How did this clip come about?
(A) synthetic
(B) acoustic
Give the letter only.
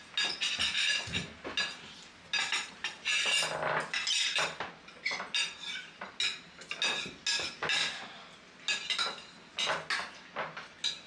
B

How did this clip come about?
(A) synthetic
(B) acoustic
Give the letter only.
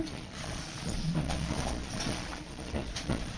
A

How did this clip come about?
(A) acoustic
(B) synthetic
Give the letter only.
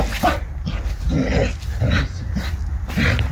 A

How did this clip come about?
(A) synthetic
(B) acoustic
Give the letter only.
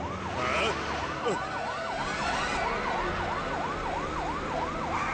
B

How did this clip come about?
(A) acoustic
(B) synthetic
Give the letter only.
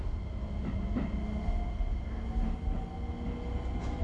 A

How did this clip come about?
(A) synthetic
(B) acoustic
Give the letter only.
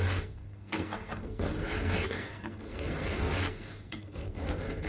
A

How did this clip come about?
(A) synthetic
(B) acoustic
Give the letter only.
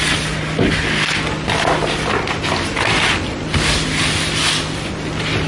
A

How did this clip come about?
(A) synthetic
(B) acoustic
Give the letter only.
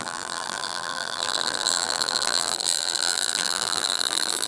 A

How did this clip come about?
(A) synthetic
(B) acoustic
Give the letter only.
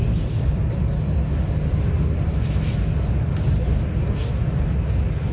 B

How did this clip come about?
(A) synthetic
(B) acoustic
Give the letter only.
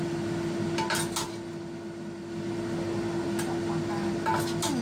B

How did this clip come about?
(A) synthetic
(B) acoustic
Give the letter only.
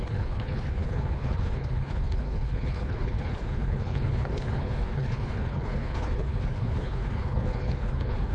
A